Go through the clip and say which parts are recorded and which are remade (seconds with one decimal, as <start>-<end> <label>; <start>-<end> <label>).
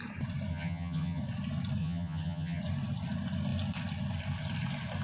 0.0-0.5 recorded; 0.5-1.2 remade; 1.2-1.8 recorded; 1.8-2.6 remade; 2.6-5.0 recorded